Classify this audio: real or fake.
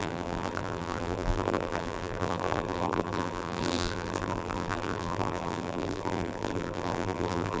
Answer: fake